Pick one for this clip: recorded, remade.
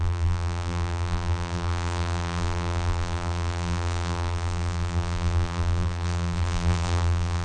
remade